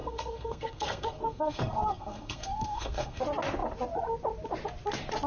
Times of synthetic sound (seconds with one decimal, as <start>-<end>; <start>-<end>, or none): 0.0-3.2